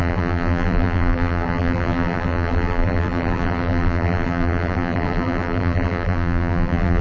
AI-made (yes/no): yes